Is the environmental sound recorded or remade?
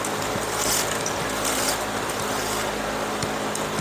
recorded